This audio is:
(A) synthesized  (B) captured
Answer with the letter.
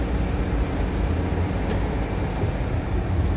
B